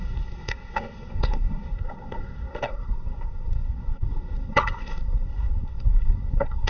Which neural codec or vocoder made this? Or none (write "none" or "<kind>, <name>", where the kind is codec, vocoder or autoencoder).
codec, SNAC